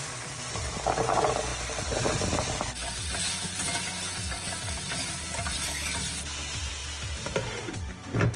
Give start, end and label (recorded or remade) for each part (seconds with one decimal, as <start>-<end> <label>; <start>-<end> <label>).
0.0-8.4 recorded